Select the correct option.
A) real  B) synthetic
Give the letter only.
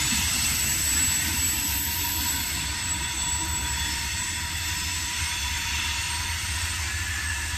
A